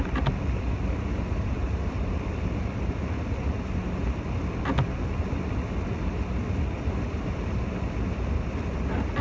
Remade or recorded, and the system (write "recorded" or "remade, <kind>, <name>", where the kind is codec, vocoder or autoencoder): recorded